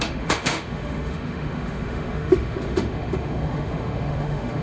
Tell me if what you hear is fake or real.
fake